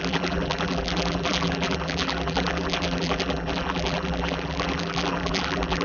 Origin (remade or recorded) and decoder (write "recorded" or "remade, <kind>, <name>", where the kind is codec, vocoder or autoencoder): remade, vocoder, BigVGAN v2